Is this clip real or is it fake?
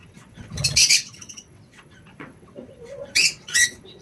fake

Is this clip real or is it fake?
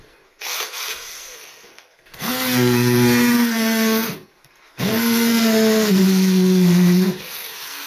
fake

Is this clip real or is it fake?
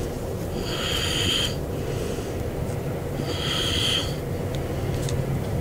real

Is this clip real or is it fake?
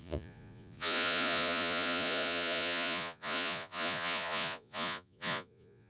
fake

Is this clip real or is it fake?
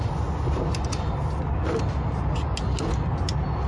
real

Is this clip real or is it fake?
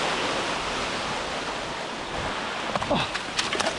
real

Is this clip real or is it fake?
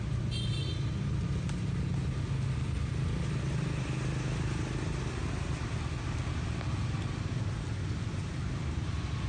real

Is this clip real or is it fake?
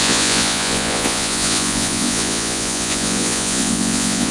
fake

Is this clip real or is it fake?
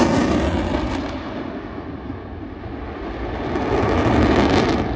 real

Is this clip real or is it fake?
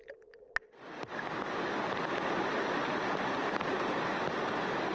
real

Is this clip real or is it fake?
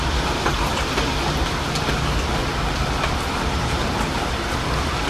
real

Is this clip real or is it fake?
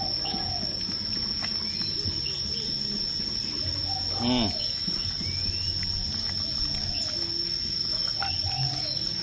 real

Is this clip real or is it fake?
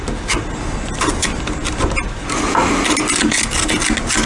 real